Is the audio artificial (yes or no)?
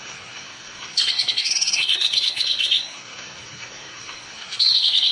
yes